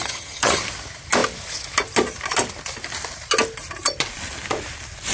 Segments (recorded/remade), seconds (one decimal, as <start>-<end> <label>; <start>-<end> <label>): 0.0-0.6 remade; 0.6-5.1 recorded